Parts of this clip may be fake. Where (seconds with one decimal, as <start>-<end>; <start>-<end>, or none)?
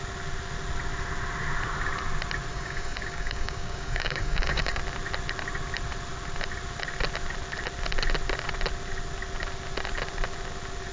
2.5-4.8